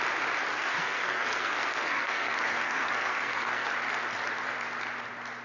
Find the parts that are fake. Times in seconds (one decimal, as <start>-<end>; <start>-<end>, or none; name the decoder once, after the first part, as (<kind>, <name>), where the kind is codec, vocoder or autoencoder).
0.5-3.7 (codec, SNAC)